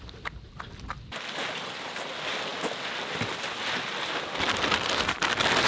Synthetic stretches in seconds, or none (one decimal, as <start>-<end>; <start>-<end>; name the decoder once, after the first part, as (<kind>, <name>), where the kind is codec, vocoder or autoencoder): none